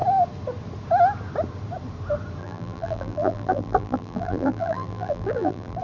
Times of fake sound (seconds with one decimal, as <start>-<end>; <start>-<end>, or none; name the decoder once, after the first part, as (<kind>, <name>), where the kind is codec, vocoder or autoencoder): 2.4-5.8 (vocoder, BigVGAN v2)